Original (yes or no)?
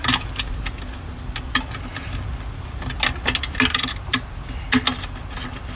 yes